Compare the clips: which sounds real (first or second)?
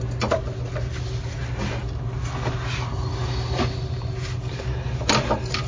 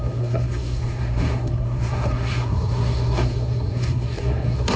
first